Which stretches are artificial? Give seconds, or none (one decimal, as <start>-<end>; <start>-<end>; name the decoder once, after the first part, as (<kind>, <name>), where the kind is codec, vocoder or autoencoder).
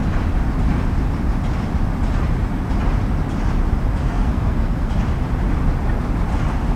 4.0-4.9 (codec, SNAC)